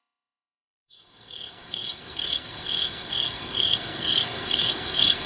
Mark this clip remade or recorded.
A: remade